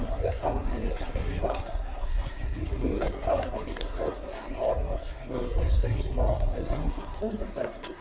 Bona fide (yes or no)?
no